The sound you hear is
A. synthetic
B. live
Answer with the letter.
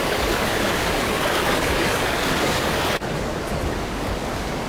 A